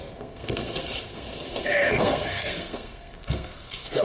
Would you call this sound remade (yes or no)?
yes